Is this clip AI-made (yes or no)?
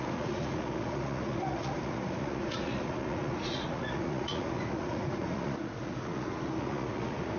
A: yes